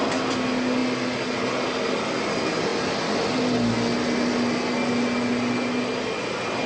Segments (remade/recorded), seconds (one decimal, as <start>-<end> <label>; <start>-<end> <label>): 0.0-6.7 recorded